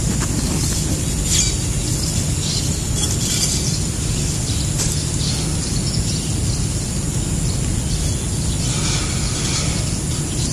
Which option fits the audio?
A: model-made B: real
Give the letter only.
B